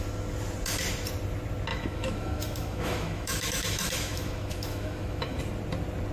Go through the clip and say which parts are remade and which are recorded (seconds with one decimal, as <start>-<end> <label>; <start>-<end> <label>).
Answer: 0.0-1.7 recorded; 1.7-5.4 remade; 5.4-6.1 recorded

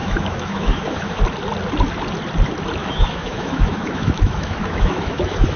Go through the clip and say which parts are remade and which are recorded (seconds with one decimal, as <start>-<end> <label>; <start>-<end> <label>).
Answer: 0.0-1.2 remade; 1.2-2.8 recorded; 2.8-5.6 remade

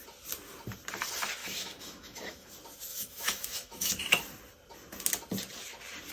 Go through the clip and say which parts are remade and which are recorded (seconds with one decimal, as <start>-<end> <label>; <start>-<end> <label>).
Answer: 0.0-1.4 recorded; 1.4-2.5 remade; 2.5-2.9 recorded; 2.9-3.9 remade; 3.9-6.1 recorded

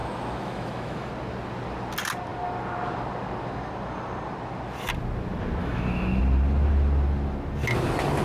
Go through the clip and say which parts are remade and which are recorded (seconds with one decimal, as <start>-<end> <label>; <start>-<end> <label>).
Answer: 0.0-1.1 remade; 1.1-5.6 recorded; 5.6-6.2 remade; 6.2-8.2 recorded

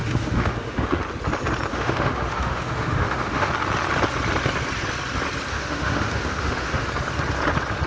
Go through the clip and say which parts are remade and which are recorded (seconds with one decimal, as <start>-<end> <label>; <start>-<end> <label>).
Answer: 0.0-1.0 remade; 1.0-1.7 recorded; 1.7-3.5 remade; 3.5-5.5 recorded; 5.5-6.8 remade; 6.8-7.9 recorded

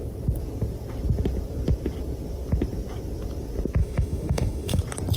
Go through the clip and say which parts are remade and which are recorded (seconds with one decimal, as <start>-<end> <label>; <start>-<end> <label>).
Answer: 0.0-3.8 recorded; 3.8-4.8 remade; 4.8-5.2 recorded